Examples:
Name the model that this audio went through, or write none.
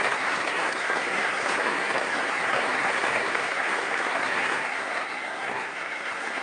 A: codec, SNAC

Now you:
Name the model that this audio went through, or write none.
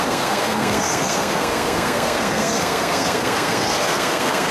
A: codec, SNAC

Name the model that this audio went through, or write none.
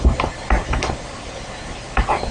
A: none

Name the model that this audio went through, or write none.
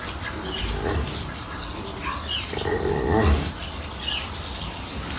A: none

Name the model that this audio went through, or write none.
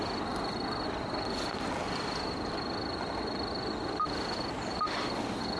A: none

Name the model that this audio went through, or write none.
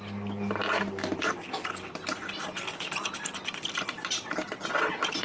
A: none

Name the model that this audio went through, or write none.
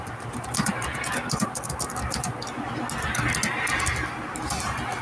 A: none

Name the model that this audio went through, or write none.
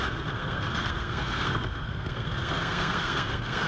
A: codec, SNAC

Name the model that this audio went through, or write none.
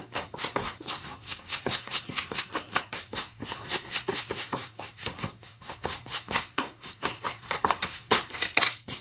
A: codec, SNAC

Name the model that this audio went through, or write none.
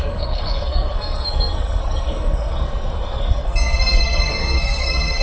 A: codec, SNAC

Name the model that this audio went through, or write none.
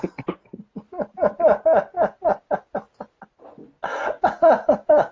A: none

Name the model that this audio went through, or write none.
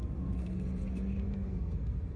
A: codec, SNAC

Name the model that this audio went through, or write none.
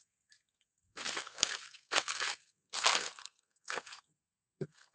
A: codec, SNAC